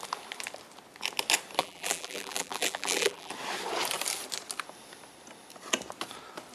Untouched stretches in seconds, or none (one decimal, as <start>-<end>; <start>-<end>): 0.0-1.6; 3.3-6.5